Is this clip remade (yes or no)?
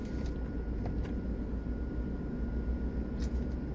no